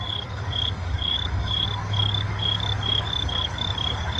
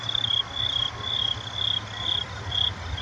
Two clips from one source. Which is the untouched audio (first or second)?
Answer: second